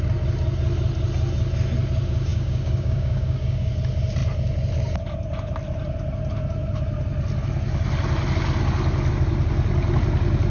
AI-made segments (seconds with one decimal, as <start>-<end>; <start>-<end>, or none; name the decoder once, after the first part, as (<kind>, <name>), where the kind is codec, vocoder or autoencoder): 2.3-3.7 (codec, DAC)